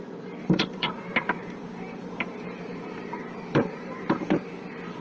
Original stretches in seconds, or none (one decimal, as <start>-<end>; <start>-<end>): 0.0-0.4; 0.9-1.4; 4.2-5.0